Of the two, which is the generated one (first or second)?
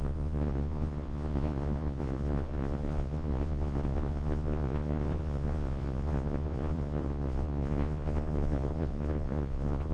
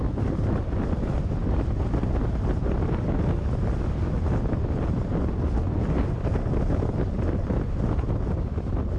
first